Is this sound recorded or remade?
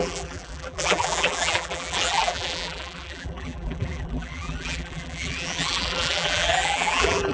remade